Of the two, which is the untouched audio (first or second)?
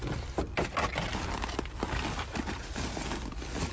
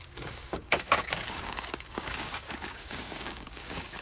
first